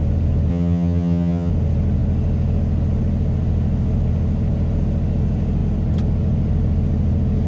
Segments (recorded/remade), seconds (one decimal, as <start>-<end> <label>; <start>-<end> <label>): 0.0-0.5 recorded; 0.5-1.5 remade; 1.5-7.5 recorded